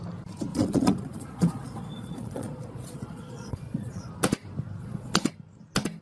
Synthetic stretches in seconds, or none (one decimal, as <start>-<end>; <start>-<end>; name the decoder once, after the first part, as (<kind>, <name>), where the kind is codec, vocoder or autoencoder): 0.5-4.1 (vocoder, Vocos); 4.8-5.3